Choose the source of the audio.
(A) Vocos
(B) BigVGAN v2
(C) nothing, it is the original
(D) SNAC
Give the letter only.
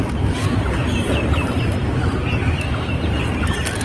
C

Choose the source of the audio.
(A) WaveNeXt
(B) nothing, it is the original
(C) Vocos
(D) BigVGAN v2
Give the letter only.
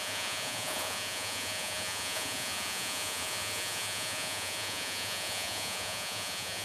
C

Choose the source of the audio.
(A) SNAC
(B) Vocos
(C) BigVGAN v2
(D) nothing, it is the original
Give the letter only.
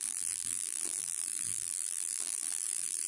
C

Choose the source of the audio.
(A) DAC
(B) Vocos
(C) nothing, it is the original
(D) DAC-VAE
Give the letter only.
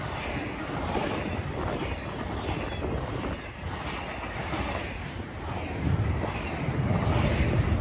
C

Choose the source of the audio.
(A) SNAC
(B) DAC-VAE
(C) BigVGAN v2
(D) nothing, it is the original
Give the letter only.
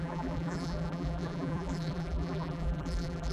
C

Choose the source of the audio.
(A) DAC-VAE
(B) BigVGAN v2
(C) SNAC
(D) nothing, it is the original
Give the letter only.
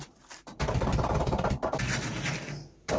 B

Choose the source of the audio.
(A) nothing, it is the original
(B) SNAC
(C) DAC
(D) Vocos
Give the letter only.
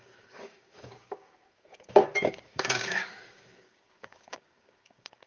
C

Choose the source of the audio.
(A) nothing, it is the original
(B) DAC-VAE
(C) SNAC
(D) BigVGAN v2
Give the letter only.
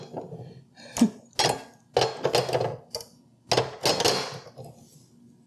A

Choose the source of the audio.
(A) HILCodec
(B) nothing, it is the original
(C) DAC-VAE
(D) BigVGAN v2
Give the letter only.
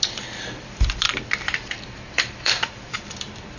D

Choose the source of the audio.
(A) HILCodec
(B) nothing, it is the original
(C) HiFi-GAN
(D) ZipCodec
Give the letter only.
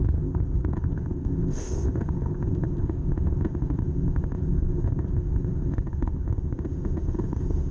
D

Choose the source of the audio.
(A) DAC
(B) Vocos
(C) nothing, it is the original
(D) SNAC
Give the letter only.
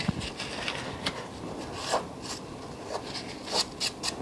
C